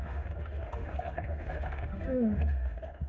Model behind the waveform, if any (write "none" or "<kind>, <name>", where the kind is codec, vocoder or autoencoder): autoencoder, DAC-VAE